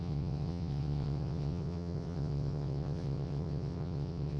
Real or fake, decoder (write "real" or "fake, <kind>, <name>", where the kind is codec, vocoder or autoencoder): fake, vocoder, WaveNeXt